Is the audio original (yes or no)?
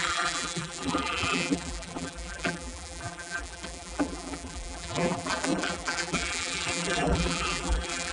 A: no